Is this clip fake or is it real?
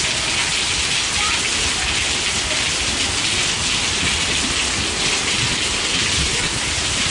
real